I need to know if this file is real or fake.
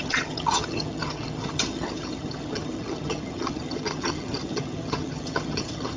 fake